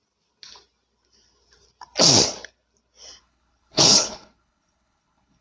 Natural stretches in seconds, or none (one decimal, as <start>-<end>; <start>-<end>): 0.0-3.2